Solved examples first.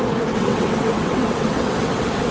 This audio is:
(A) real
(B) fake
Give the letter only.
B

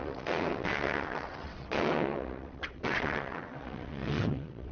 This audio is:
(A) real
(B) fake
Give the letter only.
B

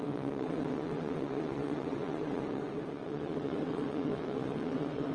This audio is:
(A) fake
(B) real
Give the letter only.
A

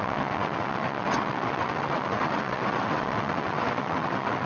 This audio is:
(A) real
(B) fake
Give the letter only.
B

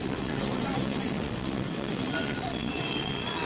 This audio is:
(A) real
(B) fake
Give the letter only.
B